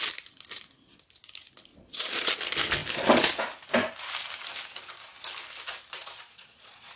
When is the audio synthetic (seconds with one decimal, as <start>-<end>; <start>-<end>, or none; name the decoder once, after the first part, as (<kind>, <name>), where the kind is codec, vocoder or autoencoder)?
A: 1.7-2.3 (vocoder, Vocos); 6.0-7.0